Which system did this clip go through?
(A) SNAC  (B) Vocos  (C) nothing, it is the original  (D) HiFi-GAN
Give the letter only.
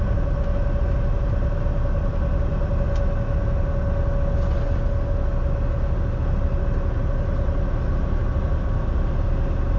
C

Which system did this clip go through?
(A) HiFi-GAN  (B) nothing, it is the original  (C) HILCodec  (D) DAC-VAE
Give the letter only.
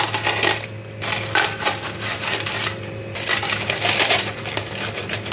B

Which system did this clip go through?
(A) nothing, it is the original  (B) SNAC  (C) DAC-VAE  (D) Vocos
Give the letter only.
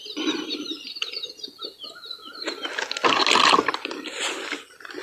A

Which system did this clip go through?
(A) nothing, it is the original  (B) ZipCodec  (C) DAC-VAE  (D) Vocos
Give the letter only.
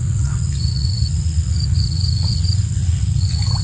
D